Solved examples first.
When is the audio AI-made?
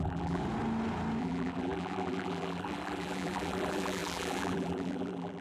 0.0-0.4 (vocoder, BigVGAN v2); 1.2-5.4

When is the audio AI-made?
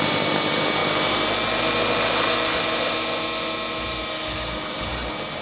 none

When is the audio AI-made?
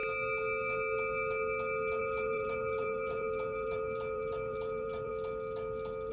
2.0-5.1 (vocoder, BigVGAN v2)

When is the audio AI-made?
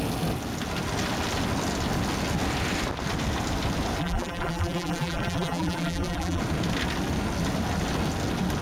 4.0-6.4 (vocoder, BigVGAN v2)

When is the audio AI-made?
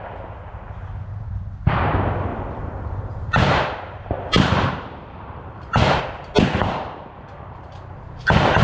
2.3-6.0 (vocoder, BigVGAN v2); 6.6-7.7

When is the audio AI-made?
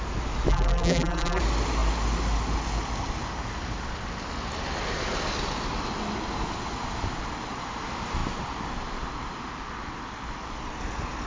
0.5-1.4 (vocoder, BigVGAN v2)